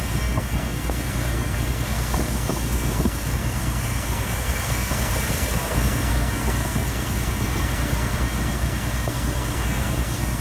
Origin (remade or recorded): remade